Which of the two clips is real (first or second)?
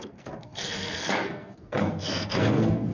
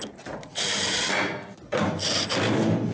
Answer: second